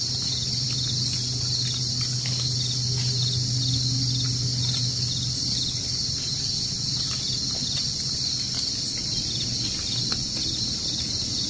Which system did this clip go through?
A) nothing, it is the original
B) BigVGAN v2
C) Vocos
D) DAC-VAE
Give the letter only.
A